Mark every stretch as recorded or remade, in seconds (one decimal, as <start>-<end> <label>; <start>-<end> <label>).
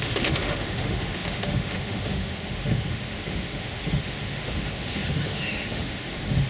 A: 0.0-6.5 remade